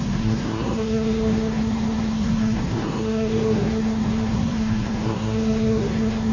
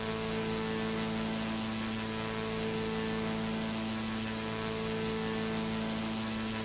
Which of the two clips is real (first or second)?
second